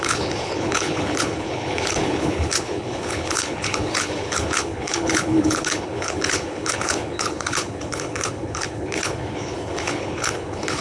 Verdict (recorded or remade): remade